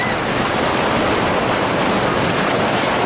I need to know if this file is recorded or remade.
recorded